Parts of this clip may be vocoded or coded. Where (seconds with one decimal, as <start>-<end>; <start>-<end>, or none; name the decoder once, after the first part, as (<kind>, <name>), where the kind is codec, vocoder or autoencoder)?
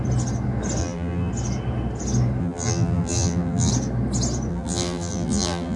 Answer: 0.8-1.3 (vocoder, BigVGAN v2); 2.4-3.7; 4.5-5.8